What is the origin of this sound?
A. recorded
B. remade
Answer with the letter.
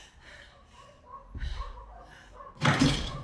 B